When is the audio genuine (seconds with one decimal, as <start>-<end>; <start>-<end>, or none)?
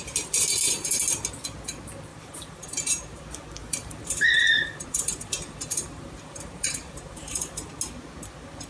0.0-2.1; 3.2-3.6; 7.7-8.7